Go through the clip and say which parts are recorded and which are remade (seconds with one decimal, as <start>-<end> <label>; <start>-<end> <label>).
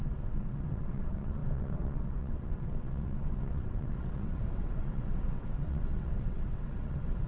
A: 0.0-7.3 remade